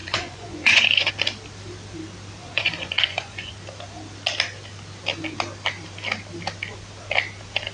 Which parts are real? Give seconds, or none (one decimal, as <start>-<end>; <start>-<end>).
1.1-2.4; 3.5-7.7